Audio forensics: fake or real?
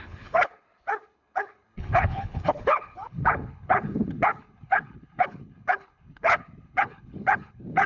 fake